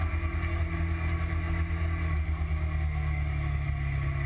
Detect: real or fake real